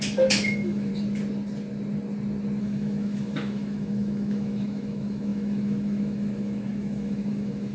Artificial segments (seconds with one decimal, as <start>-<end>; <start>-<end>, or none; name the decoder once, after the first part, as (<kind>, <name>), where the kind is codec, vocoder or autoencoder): 0.0-0.9 (autoencoder, DAC-VAE); 2.6-7.7